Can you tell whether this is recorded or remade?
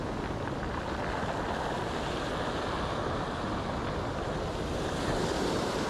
recorded